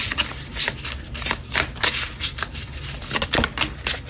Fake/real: real